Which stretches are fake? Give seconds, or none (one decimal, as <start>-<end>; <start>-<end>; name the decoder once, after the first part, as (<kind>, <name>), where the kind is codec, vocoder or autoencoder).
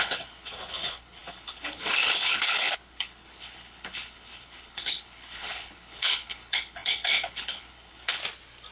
0.0-8.2 (codec, HILCodec)